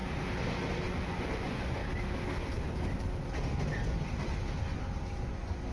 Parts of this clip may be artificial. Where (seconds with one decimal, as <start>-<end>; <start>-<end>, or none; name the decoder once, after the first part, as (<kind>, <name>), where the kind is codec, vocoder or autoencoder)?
1.1-1.8 (vocoder, Vocos); 5.2-5.7